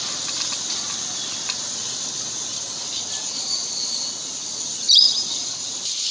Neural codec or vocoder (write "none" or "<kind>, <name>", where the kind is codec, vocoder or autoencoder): none